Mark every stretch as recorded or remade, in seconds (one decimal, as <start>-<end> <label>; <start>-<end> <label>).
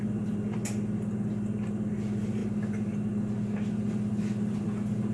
0.0-5.1 recorded